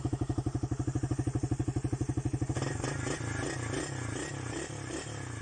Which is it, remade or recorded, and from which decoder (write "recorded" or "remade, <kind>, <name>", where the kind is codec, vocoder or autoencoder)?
recorded